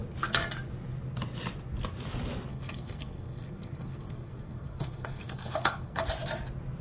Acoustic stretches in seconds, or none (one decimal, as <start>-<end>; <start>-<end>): 0.0-2.5; 6.1-6.8

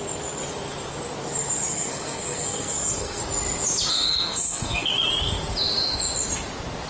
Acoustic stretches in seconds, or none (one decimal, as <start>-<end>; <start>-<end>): 0.0-1.7; 3.2-3.9; 4.9-6.9

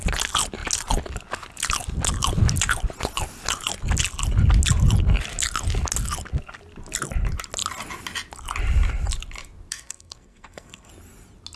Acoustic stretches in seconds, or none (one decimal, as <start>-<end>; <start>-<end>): 0.0-9.7; 10.9-11.6

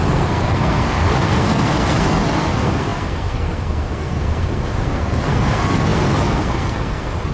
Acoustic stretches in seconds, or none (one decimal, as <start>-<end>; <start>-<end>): none